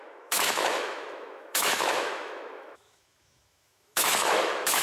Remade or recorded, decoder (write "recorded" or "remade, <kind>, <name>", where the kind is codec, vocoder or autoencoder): remade, autoencoder, DAC-VAE